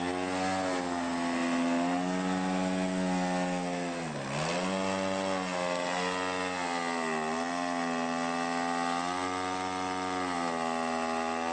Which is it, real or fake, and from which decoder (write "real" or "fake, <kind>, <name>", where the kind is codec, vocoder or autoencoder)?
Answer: real